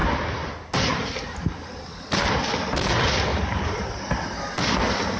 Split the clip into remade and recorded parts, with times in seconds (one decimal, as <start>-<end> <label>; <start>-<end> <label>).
0.0-0.9 recorded; 0.9-2.2 remade; 2.2-3.3 recorded; 3.3-4.0 remade; 4.0-5.2 recorded